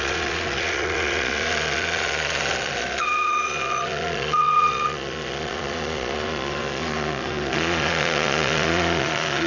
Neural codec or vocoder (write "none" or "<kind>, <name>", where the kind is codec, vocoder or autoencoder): vocoder, Vocos